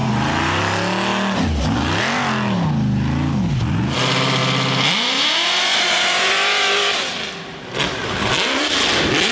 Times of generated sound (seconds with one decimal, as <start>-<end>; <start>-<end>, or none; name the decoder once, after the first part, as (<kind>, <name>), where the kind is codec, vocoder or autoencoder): 0.0-0.6 (vocoder, BigVGAN v2)